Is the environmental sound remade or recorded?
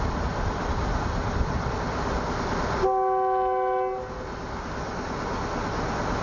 recorded